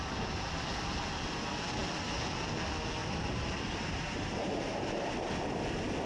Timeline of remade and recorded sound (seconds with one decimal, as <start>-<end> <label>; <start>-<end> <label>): 0.0-3.0 recorded; 3.0-5.1 remade; 5.1-6.1 recorded